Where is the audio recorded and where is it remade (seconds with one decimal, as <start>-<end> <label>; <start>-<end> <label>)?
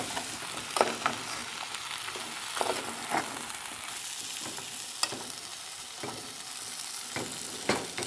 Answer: 0.0-8.1 recorded